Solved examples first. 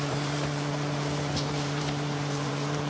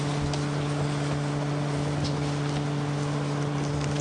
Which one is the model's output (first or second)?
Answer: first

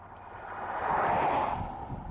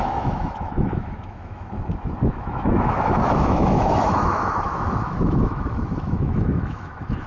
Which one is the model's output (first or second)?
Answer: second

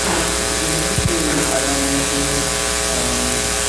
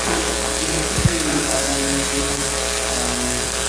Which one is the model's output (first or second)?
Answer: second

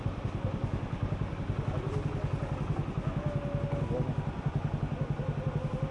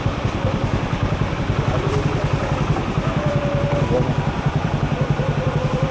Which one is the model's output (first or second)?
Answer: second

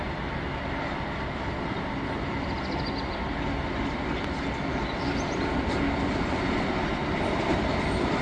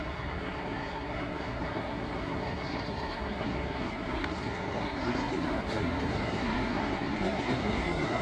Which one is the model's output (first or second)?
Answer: second